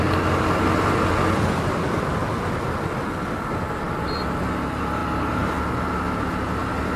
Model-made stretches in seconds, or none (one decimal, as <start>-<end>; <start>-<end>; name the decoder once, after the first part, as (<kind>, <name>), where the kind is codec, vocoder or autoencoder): none